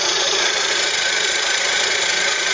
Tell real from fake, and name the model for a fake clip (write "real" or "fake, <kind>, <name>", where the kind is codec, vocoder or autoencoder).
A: fake, vocoder, Vocos